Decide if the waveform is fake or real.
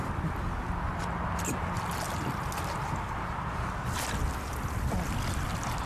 real